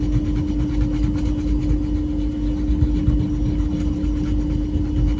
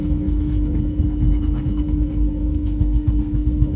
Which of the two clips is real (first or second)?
first